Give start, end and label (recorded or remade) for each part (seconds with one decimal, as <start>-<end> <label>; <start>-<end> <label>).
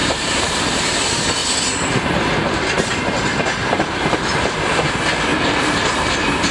0.0-0.8 remade; 0.8-3.6 recorded; 3.6-4.2 remade; 4.2-5.3 recorded; 5.3-6.5 remade